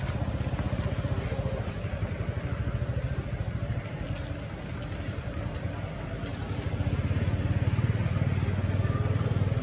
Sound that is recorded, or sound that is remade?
recorded